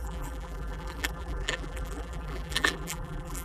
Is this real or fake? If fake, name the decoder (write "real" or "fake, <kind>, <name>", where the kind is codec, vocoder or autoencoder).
fake, vocoder, BigVGAN v2